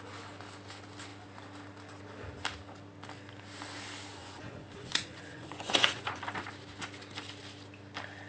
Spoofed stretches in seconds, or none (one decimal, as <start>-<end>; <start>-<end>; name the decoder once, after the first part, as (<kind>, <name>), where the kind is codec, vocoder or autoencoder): 4.2-6.2 (vocoder, Vocos)